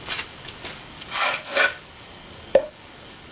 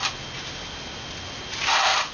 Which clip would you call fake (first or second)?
first